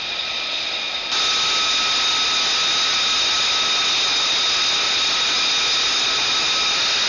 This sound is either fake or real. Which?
real